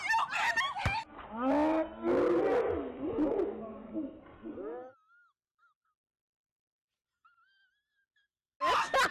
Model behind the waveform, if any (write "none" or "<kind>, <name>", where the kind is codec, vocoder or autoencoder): none